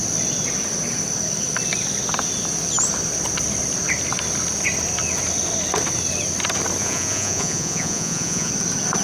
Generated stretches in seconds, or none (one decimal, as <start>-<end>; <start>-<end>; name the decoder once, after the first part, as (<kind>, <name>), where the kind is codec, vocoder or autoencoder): 6.8-8.5 (vocoder, Vocos)

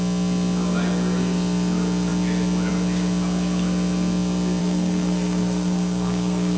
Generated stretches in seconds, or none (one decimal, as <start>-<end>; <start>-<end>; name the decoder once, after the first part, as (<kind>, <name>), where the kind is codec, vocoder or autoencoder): 4.6-6.6 (codec, SNAC)

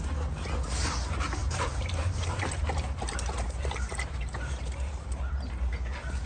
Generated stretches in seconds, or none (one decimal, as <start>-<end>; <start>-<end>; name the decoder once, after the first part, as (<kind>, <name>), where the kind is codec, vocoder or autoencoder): 1.4-5.2 (vocoder, BigVGAN v2)

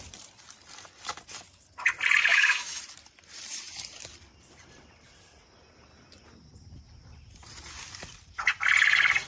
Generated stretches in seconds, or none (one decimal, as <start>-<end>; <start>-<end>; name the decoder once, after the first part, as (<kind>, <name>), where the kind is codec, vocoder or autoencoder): 2.3-2.8 (autoencoder, DAC-VAE)

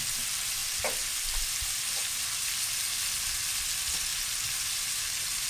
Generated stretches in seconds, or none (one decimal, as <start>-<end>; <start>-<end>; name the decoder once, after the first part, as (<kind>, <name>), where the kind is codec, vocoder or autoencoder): none